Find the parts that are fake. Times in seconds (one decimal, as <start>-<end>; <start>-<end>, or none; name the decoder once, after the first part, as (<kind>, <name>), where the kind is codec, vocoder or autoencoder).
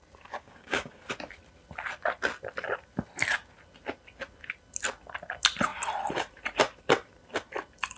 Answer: 0.4-1.0 (codec, DAC)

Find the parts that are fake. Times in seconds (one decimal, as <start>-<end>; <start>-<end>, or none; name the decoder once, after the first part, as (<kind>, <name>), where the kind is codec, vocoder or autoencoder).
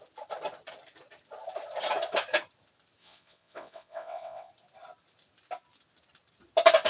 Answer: 3.0-4.5 (vocoder, WaveNeXt)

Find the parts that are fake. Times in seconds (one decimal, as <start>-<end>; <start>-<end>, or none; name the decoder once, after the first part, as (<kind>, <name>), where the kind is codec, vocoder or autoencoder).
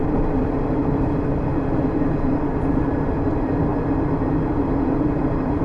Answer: 0.0-3.7 (vocoder, BigVGAN v2); 4.6-5.6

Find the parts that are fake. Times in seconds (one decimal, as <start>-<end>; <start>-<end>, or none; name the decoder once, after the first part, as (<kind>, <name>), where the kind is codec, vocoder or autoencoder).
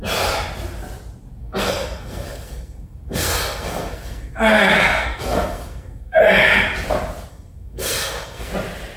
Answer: 1.4-6.2 (codec, SNAC); 7.3-8.5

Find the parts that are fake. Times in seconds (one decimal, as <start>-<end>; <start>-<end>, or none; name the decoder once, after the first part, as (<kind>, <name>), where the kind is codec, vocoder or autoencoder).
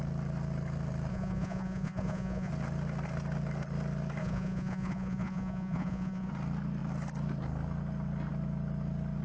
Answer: 1.1-2.5 (vocoder, Vocos); 4.2-6.3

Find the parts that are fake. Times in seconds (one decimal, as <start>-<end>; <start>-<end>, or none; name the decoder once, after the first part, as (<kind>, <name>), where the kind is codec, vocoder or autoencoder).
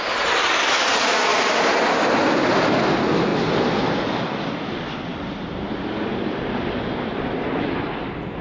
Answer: none